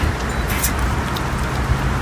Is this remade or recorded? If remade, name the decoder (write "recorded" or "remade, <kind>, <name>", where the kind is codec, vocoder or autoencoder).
recorded